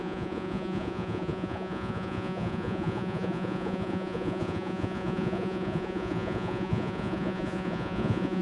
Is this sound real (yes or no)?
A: no